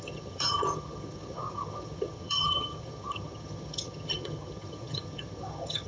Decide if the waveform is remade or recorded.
remade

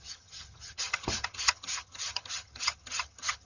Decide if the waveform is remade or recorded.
remade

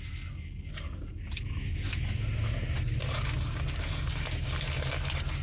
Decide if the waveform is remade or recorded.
recorded